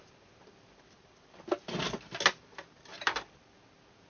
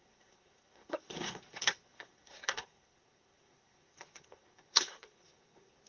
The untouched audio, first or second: first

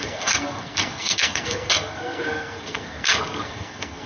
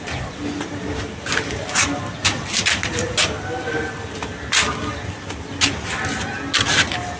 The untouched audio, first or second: second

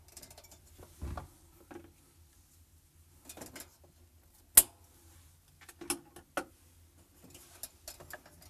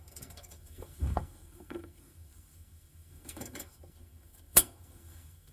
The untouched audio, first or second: first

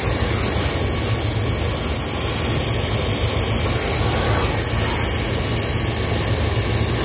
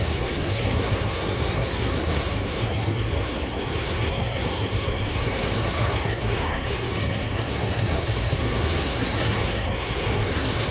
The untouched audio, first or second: first